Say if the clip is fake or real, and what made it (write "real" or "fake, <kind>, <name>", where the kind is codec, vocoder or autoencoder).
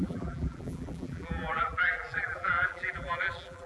fake, vocoder, BigVGAN v2